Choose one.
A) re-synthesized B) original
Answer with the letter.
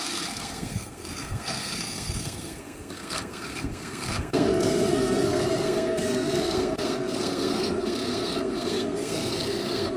A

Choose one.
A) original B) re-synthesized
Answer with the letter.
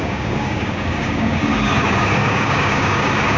B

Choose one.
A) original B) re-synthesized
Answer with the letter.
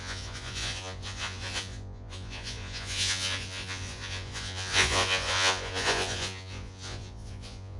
B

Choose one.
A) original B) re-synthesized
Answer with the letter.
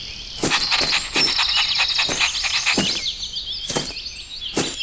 A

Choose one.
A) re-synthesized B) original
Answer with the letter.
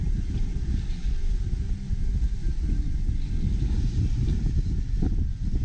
B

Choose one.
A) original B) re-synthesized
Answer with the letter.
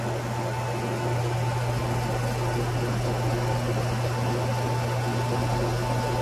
A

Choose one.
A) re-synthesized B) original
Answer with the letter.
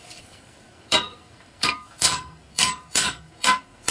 A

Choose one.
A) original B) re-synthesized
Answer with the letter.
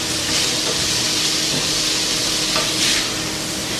A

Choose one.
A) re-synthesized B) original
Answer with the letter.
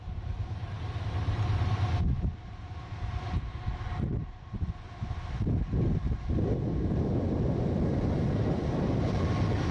B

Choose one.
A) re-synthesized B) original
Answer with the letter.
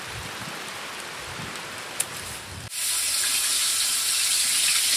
B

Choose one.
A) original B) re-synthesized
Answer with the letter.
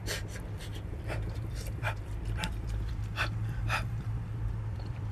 B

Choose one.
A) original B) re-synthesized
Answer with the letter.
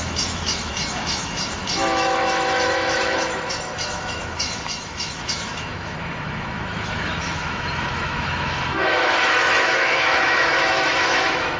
B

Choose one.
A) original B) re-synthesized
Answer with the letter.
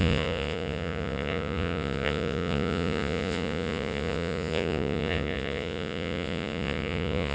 B